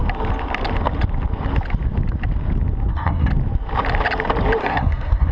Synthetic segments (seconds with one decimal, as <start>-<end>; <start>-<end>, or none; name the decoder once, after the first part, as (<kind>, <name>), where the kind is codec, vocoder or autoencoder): 2.9-3.3 (codec, SNAC); 4.6-5.3